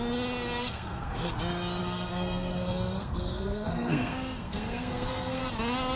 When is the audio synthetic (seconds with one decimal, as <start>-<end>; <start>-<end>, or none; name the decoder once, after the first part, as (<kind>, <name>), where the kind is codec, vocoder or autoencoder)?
0.6-1.3 (codec, SNAC); 1.8-5.4

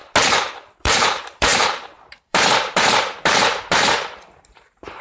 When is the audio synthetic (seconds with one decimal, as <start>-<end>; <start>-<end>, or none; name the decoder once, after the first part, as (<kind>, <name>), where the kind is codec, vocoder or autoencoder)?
0.8-5.0 (vocoder, BigVGAN v2)

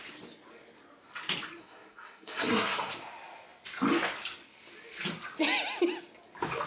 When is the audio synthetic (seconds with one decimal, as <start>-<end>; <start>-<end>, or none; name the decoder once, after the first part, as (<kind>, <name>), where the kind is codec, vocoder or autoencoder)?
1.6-2.9 (codec, SNAC)

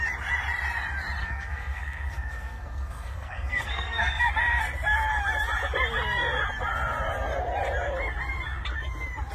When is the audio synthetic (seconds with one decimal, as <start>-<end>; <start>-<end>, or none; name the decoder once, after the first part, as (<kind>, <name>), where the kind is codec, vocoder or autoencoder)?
1.2-4.3 (codec, SNAC)

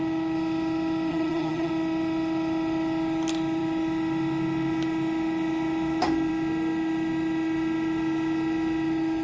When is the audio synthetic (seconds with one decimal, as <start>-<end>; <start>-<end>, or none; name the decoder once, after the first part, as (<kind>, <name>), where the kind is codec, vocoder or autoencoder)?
1.1-1.7 (vocoder, HiFi-GAN)

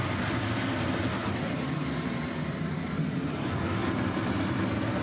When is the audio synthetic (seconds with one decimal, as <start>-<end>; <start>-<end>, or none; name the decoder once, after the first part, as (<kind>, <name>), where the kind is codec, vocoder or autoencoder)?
none